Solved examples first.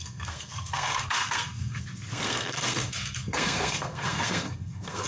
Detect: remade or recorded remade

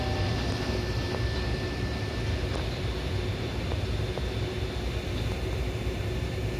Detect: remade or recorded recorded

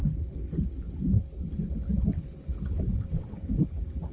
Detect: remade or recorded recorded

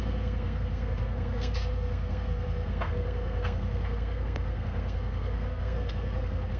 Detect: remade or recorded remade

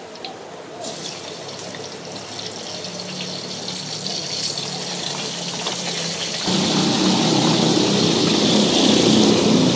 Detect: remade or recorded recorded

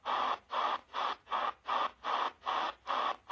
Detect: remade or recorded recorded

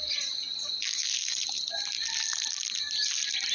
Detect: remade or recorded recorded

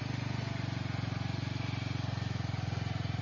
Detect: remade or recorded recorded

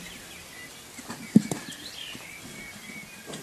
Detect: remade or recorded recorded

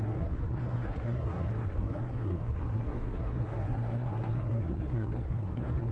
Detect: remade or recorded remade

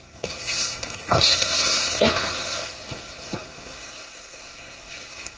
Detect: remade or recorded remade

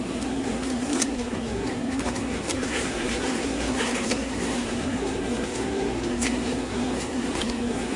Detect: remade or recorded remade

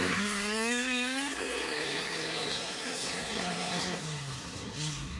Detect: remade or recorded remade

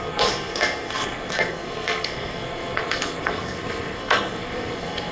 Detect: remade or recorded remade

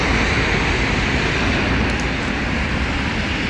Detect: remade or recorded recorded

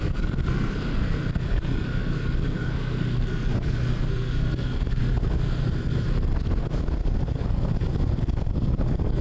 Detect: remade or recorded remade